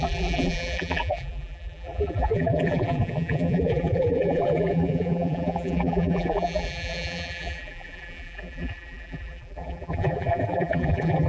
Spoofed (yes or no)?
yes